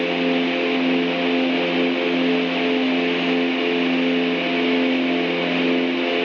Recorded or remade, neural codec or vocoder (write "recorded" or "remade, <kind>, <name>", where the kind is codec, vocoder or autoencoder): recorded